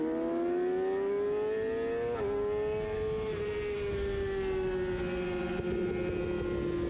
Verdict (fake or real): real